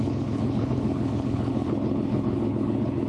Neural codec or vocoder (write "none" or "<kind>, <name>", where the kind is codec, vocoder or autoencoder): codec, HILCodec